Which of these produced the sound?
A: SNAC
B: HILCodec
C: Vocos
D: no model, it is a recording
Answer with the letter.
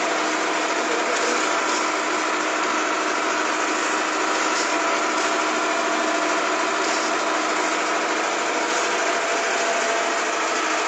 D